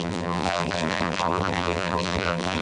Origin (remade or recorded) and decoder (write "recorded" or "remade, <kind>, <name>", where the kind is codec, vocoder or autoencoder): remade, vocoder, BigVGAN v2